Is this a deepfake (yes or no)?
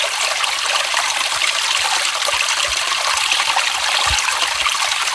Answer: no